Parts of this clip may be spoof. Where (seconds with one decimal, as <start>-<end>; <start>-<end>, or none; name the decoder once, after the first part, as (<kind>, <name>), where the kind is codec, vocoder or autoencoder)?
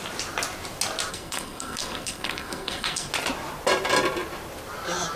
1.1-3.1 (codec, SNAC)